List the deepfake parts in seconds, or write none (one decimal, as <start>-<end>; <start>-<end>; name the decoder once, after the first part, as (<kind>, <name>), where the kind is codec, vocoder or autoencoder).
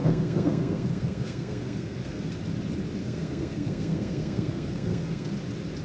0.0-2.3 (codec, SNAC); 3.0-5.3